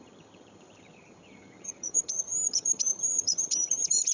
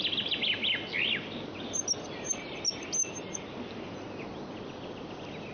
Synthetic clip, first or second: first